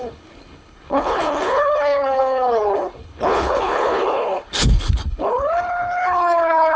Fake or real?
fake